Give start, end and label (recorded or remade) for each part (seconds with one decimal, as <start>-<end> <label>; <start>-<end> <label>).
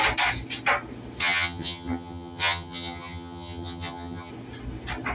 0.0-1.2 recorded; 1.2-4.3 remade; 4.3-5.1 recorded